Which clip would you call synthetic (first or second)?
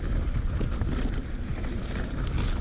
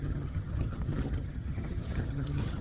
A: second